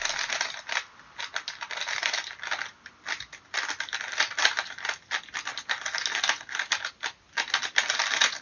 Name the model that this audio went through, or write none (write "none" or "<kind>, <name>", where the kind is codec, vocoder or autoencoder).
none